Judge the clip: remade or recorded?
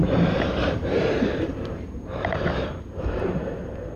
remade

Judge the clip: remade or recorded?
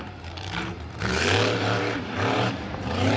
remade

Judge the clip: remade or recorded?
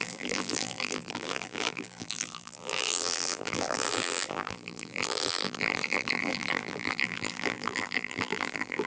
remade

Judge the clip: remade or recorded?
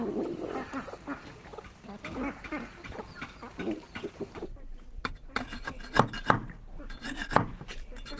recorded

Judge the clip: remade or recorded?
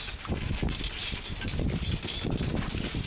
recorded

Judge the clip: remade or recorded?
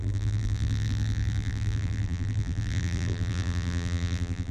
remade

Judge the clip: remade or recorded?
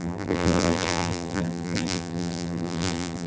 remade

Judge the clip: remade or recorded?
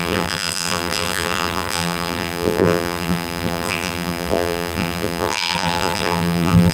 remade